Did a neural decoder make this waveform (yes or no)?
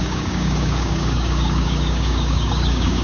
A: yes